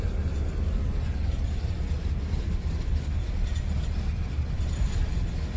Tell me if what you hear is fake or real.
real